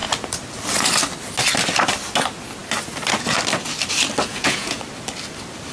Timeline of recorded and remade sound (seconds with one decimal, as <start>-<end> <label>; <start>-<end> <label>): 0.0-4.3 recorded; 4.3-4.8 remade; 4.8-5.7 recorded